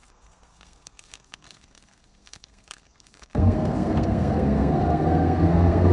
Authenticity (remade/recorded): remade